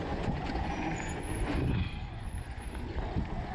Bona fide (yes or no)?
no